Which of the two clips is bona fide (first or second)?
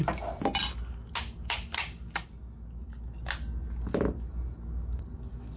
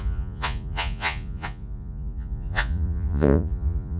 first